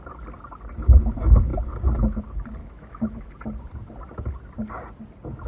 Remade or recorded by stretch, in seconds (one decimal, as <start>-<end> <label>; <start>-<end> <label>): 0.0-2.6 recorded; 2.6-3.3 remade; 3.3-5.5 recorded